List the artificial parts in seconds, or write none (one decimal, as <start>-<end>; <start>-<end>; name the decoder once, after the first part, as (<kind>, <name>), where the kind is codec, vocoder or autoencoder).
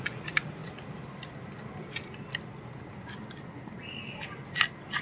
none